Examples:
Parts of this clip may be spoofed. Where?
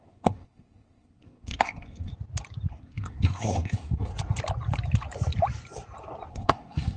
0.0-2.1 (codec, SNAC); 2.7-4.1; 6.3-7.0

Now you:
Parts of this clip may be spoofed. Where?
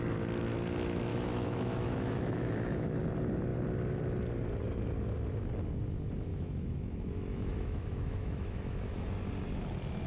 1.1-3.0 (autoencoder, DAC-VAE); 6.3-9.1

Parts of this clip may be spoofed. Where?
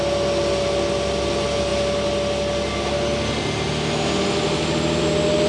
none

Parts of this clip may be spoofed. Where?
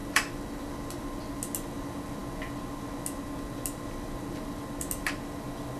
none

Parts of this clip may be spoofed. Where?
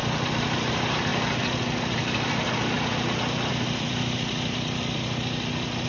none